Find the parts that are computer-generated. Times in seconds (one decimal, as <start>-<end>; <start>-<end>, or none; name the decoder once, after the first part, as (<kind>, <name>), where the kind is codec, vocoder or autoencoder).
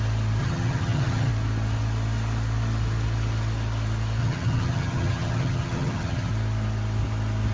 0.4-1.3 (vocoder, HiFi-GAN); 4.2-6.3